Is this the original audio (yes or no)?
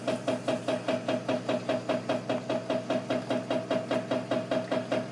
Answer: yes